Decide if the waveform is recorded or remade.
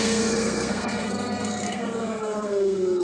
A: remade